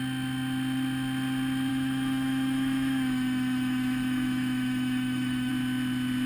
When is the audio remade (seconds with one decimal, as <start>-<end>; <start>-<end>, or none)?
1.7-5.5